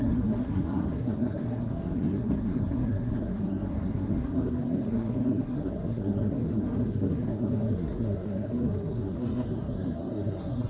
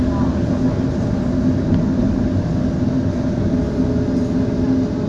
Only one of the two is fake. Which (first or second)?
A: first